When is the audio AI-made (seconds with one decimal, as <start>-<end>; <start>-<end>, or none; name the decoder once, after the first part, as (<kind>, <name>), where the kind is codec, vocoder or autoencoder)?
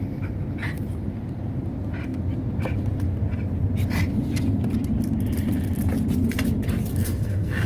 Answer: 6.9-7.7 (codec, SNAC)